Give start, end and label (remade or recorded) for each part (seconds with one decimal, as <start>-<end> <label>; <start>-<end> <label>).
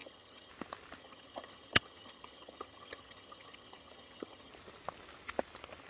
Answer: 0.0-0.5 remade; 0.5-1.0 recorded; 1.0-4.5 remade; 4.5-5.9 recorded